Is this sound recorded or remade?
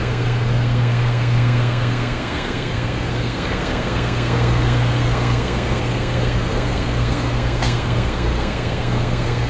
remade